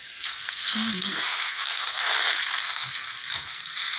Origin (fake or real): fake